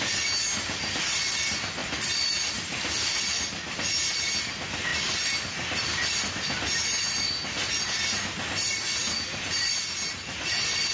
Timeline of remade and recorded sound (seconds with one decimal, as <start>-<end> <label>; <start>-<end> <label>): 0.0-1.8 recorded; 1.8-2.5 remade; 2.5-4.9 recorded; 4.9-6.1 remade; 6.1-10.9 recorded